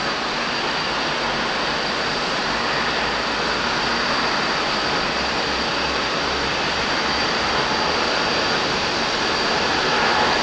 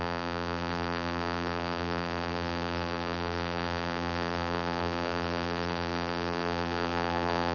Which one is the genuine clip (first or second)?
first